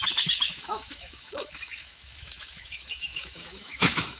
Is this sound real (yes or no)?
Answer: no